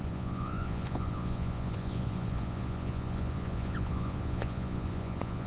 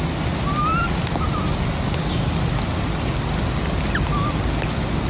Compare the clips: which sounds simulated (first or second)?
first